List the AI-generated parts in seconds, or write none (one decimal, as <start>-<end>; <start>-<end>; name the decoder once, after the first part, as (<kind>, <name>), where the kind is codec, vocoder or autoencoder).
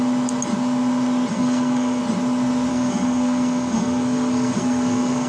1.3-2.0 (codec, SNAC); 2.7-5.3